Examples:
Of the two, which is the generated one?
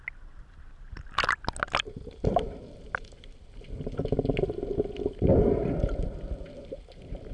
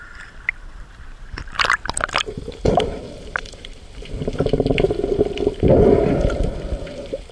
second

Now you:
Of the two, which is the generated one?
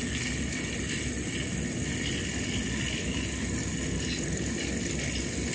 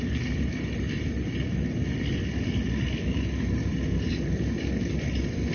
second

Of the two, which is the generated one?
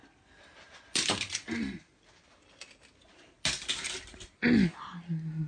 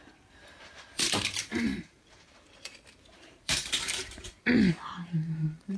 second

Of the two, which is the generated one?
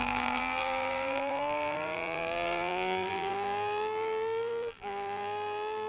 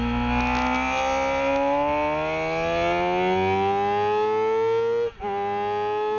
first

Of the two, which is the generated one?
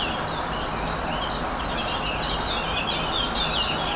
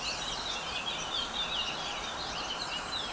second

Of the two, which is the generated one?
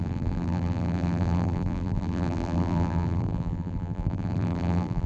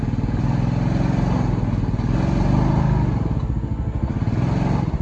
first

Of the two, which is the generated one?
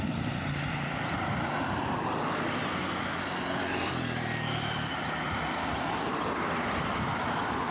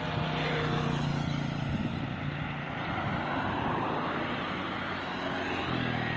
first